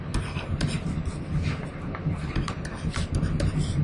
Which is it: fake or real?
real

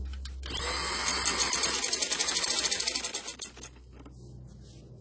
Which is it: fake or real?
real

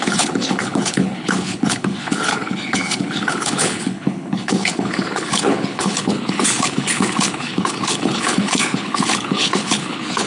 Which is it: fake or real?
fake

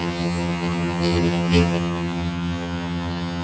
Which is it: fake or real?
fake